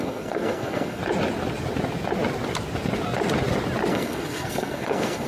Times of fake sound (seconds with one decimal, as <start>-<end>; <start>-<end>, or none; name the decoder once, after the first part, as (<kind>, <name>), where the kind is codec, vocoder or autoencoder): 0.0-1.0 (codec, SNAC); 3.9-5.3